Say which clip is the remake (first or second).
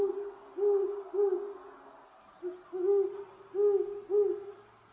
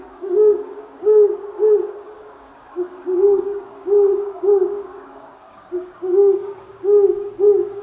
second